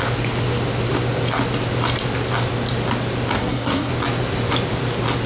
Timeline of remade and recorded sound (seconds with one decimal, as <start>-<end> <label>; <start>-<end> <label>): 0.0-3.4 recorded; 3.4-3.9 remade; 3.9-5.3 recorded